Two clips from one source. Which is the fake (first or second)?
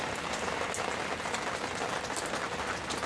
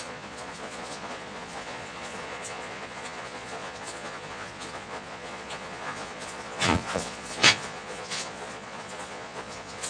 second